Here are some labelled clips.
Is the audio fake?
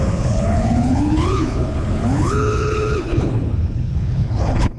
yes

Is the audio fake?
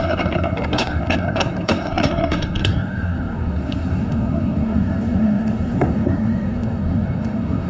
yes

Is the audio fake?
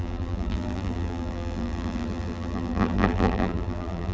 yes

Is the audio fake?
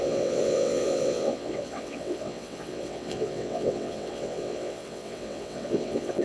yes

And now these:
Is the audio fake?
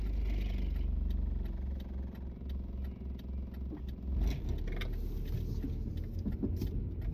no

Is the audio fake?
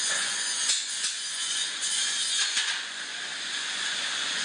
yes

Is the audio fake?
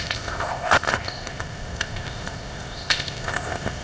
yes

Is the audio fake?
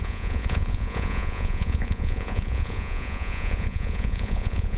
yes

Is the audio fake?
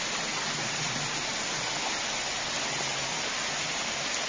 no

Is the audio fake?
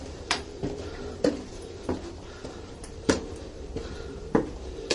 yes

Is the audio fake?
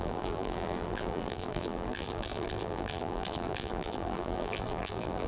yes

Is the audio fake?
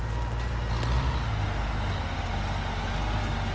no